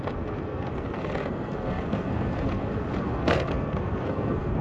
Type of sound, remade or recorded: remade